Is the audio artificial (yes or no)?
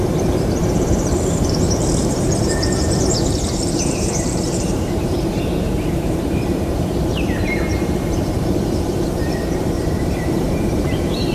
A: yes